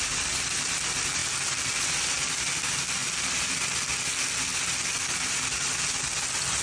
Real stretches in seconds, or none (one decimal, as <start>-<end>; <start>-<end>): 0.0-6.6

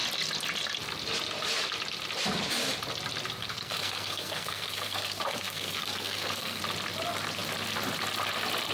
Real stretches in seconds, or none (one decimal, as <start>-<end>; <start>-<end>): 0.0-3.4; 6.6-8.7

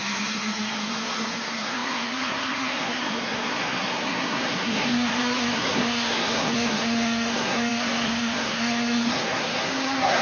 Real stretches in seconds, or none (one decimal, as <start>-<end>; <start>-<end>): none

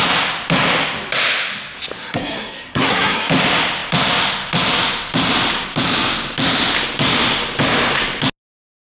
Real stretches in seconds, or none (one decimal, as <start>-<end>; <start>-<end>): 0.0-2.0; 3.3-9.0